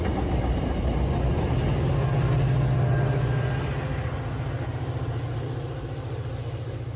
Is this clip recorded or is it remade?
recorded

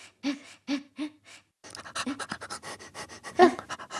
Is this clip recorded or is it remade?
recorded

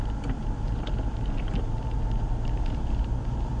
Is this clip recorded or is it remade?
recorded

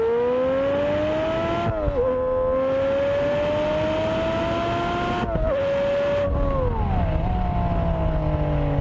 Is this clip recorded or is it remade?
recorded